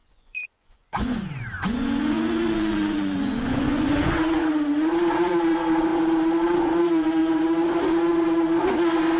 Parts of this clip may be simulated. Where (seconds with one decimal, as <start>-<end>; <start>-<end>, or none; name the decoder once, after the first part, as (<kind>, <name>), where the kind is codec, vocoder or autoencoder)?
0.0-9.2 (vocoder, Vocos)